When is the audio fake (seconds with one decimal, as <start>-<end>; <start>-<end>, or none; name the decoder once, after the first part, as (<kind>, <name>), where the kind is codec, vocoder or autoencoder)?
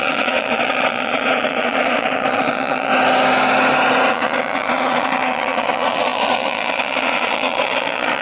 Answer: 0.0-2.9 (vocoder, Vocos); 4.1-8.2